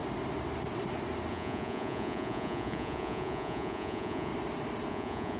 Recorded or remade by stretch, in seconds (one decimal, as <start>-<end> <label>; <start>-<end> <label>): 0.0-1.3 recorded; 1.3-4.3 remade; 4.3-4.9 recorded; 4.9-5.4 remade